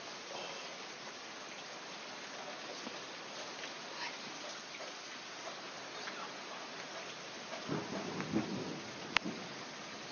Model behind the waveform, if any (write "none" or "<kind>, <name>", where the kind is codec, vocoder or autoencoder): none